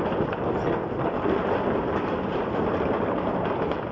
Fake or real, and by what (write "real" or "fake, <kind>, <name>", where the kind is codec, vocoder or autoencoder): real